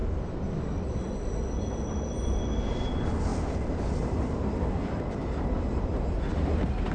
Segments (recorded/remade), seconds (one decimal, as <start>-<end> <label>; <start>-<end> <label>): 0.0-6.9 recorded